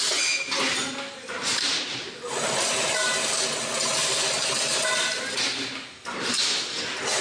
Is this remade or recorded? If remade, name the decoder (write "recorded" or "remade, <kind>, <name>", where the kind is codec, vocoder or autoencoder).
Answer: recorded